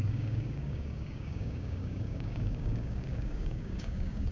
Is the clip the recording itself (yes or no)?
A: no